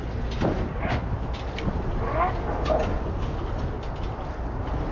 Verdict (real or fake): real